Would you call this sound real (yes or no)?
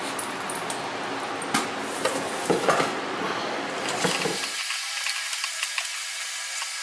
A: yes